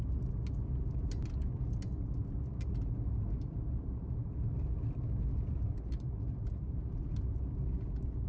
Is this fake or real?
real